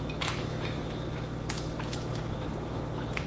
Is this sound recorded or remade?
remade